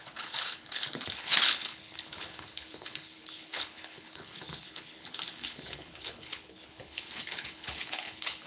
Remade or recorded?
remade